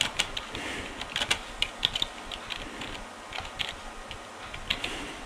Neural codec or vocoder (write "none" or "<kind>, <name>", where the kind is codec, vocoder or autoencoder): none